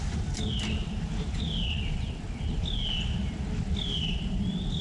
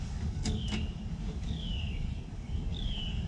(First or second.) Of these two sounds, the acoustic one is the first